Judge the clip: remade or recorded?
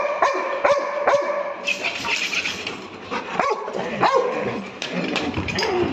remade